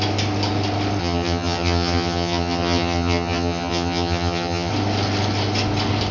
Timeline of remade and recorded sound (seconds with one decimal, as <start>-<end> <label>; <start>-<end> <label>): 0.0-1.0 recorded; 1.0-4.7 remade; 4.7-6.1 recorded